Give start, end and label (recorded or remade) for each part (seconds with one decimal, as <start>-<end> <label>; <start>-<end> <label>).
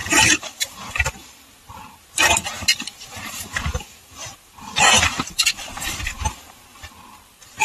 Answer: 0.0-0.9 remade; 0.9-2.7 recorded; 2.7-7.6 remade